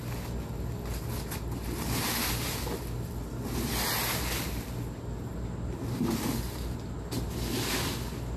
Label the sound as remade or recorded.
recorded